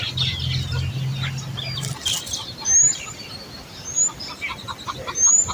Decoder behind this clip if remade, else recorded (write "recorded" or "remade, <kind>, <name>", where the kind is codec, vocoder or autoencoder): recorded